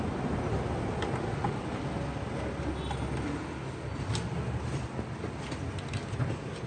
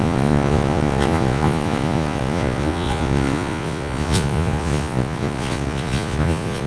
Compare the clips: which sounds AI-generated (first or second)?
second